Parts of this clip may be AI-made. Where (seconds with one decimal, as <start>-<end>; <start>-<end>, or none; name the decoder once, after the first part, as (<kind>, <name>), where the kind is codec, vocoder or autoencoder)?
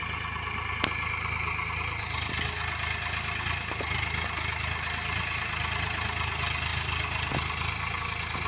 none